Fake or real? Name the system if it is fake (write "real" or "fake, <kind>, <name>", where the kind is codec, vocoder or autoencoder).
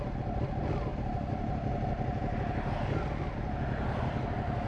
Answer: real